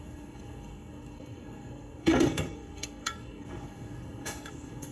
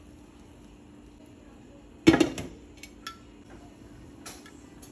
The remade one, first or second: first